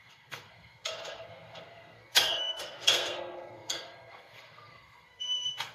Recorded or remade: remade